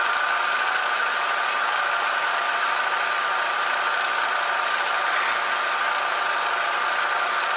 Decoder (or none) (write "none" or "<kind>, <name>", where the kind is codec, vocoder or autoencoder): none